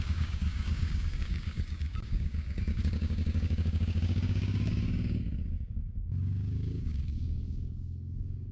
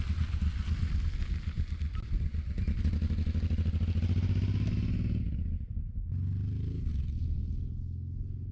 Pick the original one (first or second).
second